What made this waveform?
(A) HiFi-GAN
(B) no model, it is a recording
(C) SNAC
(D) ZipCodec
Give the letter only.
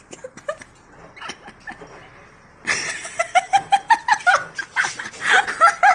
B